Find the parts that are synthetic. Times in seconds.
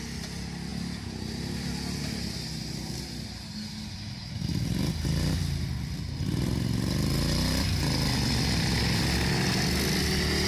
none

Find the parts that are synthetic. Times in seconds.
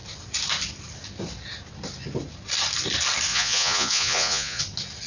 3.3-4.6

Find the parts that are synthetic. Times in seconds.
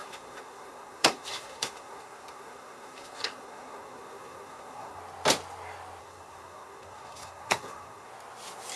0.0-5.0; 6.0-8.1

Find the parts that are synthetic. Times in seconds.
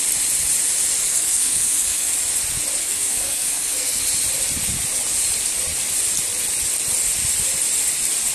1.0-2.1; 2.8-4.0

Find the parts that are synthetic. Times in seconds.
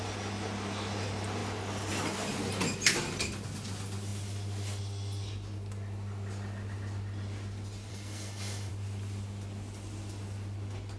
7.9-8.7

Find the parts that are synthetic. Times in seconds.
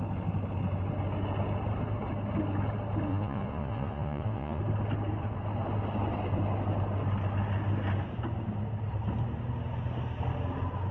3.1-4.6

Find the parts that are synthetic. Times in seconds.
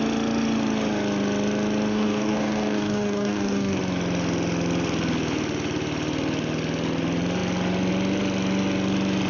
1.9-3.8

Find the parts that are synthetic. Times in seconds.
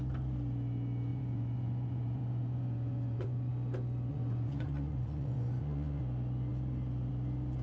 1.1-3.5; 4.1-6.0